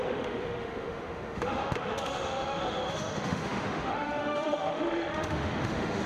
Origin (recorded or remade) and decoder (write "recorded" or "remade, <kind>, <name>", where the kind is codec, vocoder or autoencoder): remade, autoencoder, DAC-VAE